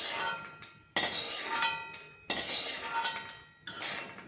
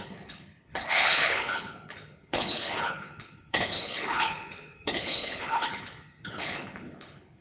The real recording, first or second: first